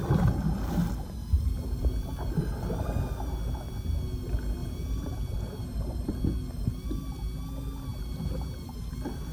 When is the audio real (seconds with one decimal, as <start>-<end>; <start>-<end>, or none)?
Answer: 0.0-0.8; 1.9-4.6; 6.1-7.9; 8.9-9.3